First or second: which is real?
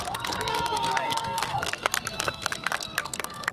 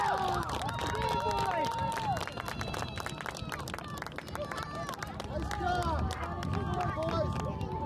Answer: second